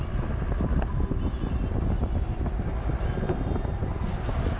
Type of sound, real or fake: real